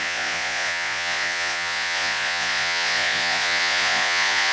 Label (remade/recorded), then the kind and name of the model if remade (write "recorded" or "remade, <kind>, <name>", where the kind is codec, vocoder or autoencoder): remade, vocoder, Vocos